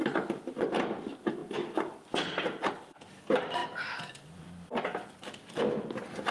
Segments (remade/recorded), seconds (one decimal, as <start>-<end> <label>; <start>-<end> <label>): 0.0-6.3 recorded